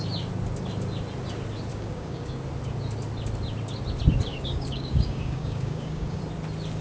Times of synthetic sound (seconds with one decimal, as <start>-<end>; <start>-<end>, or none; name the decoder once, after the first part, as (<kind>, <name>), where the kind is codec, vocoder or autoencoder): 1.7-2.3 (codec, DAC); 4.3-6.2